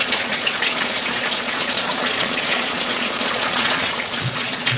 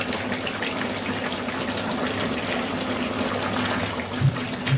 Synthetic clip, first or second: first